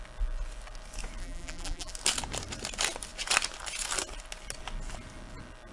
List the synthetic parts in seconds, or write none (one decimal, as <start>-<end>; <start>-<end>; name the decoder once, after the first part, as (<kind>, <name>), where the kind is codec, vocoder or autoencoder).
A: 1.2-1.9 (vocoder, BigVGAN v2)